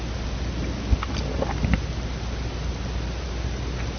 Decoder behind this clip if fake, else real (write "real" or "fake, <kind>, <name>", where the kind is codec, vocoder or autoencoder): real